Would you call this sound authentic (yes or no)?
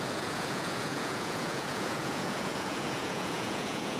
no